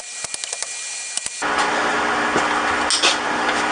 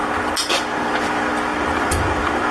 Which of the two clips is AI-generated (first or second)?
second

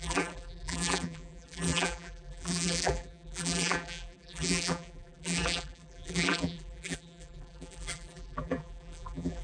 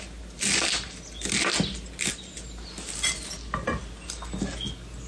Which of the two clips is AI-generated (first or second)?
first